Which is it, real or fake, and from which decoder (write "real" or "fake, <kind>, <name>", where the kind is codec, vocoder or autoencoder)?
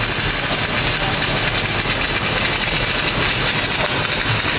real